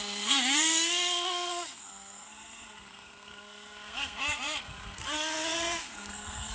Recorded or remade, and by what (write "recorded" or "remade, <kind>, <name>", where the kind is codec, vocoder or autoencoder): remade, codec, SNAC